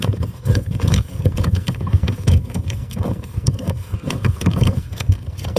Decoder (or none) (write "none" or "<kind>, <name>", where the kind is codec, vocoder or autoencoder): codec, SNAC